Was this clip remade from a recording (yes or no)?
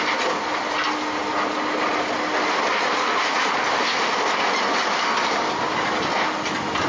no